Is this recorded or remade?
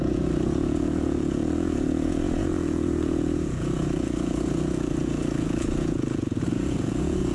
remade